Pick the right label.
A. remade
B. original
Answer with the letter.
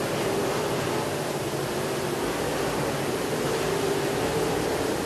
B